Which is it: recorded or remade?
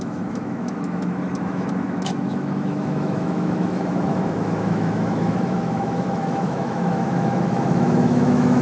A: remade